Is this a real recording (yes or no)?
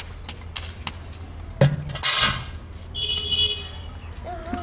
yes